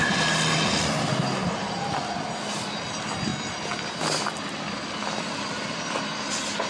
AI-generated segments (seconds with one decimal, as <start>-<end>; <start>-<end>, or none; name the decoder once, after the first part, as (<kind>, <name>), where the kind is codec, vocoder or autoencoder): none